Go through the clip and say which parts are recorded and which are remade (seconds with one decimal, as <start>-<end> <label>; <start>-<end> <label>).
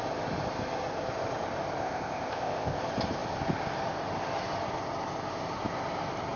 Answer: 0.0-1.8 recorded; 1.8-2.8 remade; 2.8-6.4 recorded